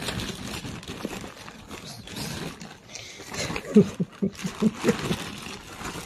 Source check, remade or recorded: recorded